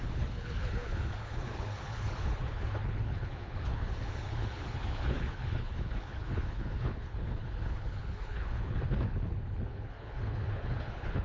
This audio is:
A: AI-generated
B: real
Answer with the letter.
A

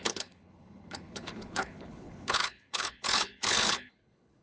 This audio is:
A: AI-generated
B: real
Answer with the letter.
A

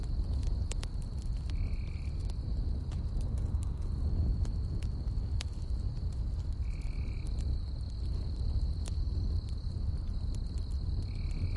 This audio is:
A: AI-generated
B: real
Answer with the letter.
B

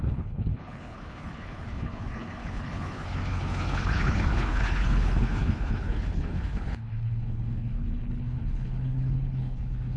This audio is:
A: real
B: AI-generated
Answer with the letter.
B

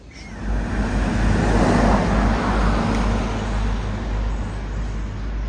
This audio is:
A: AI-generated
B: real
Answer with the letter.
B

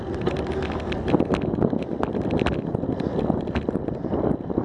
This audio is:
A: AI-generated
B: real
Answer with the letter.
B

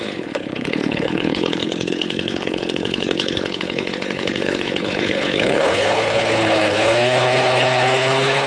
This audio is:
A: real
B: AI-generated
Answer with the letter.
B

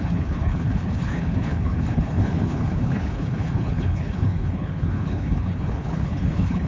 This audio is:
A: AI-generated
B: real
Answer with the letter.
A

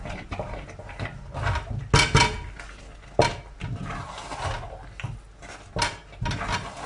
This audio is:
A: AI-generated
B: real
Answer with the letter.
B